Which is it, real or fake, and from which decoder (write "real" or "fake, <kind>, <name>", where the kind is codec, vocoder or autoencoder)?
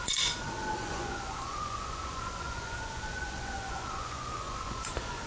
fake, vocoder, Vocos